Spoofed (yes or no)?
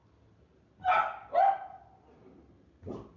no